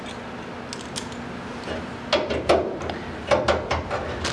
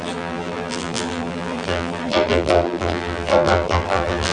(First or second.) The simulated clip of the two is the second